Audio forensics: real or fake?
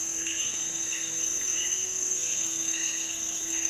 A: fake